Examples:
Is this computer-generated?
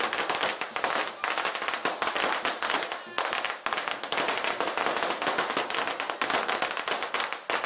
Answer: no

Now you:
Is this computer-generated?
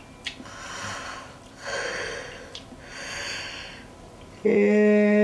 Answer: no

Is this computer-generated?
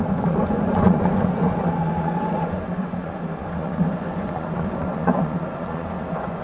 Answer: yes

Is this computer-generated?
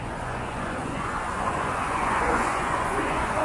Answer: yes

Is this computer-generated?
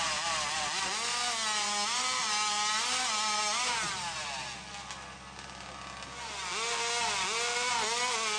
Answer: no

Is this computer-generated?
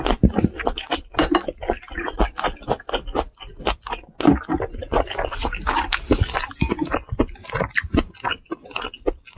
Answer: no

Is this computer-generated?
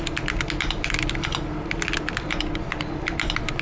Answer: no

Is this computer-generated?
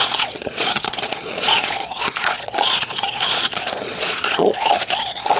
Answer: yes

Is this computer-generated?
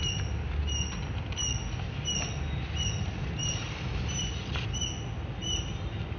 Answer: no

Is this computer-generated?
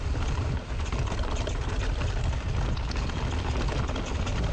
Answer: no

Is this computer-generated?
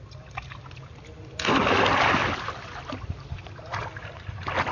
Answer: no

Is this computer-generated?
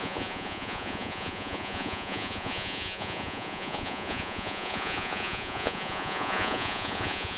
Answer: yes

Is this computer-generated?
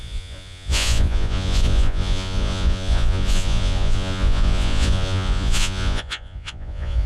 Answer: yes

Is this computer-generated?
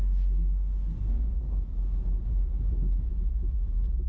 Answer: no